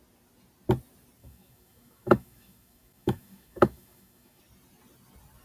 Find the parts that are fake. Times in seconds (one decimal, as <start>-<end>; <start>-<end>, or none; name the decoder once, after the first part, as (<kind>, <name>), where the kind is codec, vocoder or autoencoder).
1.2-4.4 (autoencoder, DAC-VAE)